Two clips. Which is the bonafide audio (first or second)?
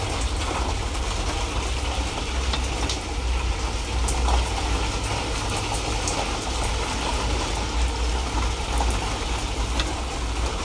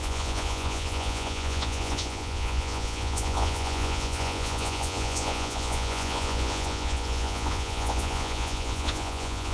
first